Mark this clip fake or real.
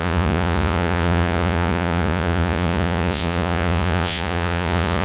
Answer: fake